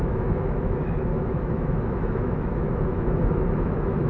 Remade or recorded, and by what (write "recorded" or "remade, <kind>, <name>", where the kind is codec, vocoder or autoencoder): remade, autoencoder, DAC-VAE